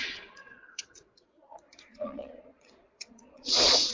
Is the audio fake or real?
fake